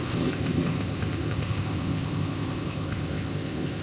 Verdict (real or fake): fake